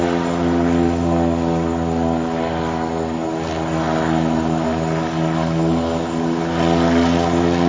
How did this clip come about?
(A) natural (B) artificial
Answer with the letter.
A